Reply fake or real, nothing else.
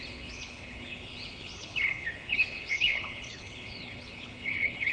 fake